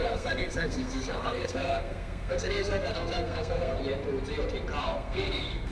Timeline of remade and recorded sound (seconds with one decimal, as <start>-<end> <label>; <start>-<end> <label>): 0.0-3.8 remade; 3.8-4.8 recorded; 4.8-5.7 remade